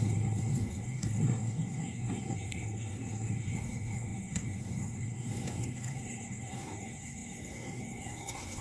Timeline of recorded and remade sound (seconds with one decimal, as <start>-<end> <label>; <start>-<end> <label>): 0.0-8.6 remade